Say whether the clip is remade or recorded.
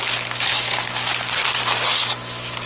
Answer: recorded